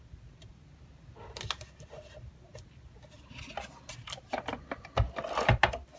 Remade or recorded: recorded